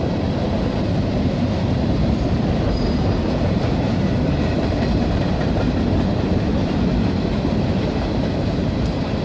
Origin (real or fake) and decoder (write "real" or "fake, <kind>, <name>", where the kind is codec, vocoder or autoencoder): fake, vocoder, BigVGAN v2